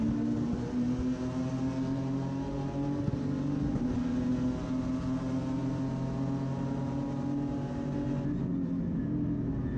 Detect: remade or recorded recorded